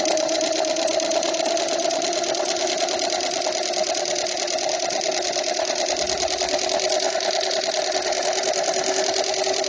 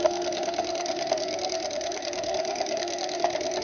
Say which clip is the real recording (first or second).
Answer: first